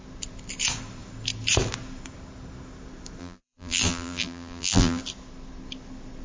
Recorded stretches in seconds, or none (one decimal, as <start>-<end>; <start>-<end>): 0.0-3.2; 5.0-6.2